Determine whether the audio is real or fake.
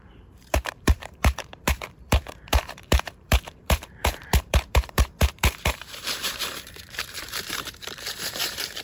fake